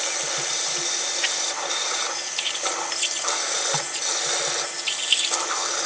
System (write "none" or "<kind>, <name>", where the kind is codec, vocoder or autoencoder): none